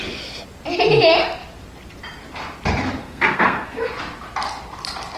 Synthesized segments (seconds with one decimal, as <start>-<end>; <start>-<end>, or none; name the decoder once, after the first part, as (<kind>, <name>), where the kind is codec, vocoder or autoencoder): 3.0-3.9 (codec, SNAC)